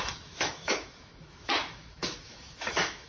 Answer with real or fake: fake